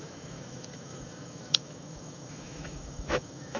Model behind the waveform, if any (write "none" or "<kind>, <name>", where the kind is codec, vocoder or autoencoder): autoencoder, DAC-VAE